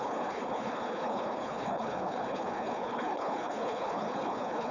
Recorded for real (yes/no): no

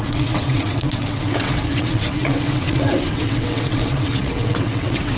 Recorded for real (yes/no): no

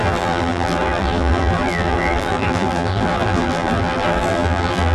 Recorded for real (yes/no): no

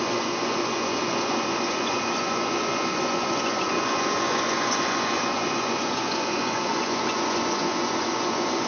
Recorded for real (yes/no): no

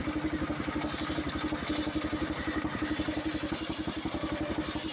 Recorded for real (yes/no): yes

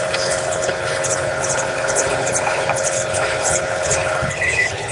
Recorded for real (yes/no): no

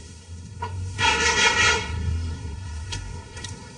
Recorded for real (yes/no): no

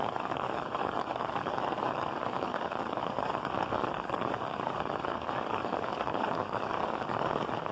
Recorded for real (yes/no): no